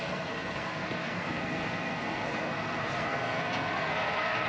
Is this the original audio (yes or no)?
no